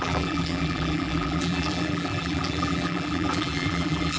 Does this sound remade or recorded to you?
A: remade